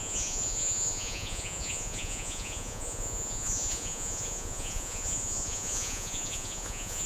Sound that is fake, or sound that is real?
fake